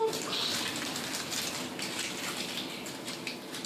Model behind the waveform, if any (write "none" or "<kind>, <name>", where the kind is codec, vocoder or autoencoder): none